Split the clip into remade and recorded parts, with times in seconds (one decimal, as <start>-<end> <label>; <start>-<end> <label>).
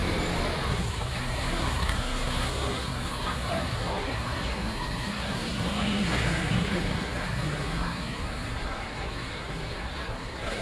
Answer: 0.0-0.7 recorded; 0.7-10.6 remade